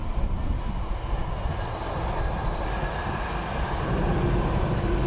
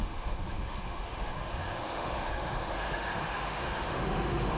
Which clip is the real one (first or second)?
first